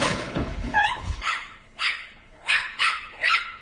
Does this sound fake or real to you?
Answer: fake